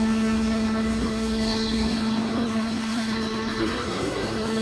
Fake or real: fake